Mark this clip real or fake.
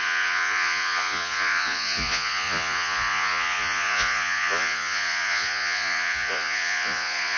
fake